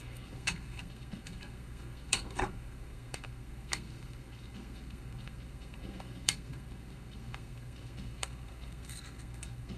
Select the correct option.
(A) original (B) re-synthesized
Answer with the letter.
B